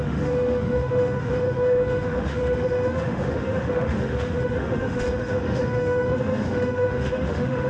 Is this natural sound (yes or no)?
no